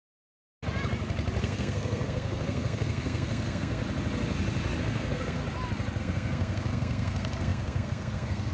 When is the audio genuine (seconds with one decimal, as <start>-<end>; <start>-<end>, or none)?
0.0-1.4; 3.8-4.8; 5.4-6.0